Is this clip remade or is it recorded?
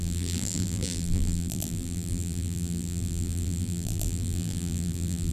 remade